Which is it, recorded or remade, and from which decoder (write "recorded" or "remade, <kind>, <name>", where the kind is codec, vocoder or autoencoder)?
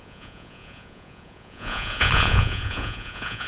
remade, vocoder, Vocos